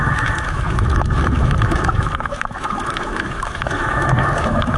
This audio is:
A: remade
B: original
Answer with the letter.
A